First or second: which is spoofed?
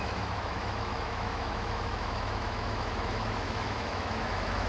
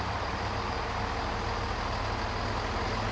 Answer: first